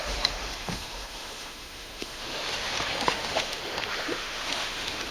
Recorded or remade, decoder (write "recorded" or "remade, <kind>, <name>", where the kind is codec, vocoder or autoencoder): remade, autoencoder, DAC-VAE